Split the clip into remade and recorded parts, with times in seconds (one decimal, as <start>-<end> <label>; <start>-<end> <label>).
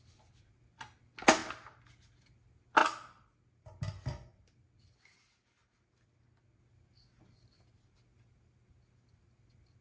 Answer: 0.0-9.8 recorded